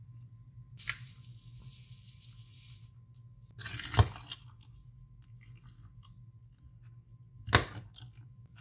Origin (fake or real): real